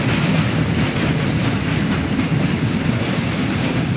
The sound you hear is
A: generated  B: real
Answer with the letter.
A